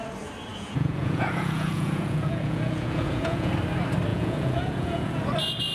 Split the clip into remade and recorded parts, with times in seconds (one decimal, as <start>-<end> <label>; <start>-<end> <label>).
0.0-0.5 recorded; 0.5-3.5 remade; 3.5-4.1 recorded; 4.1-5.2 remade; 5.2-5.7 recorded